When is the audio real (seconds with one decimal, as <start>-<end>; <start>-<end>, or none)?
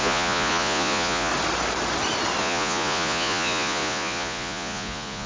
1.3-2.4